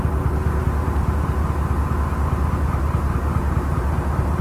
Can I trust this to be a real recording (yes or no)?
yes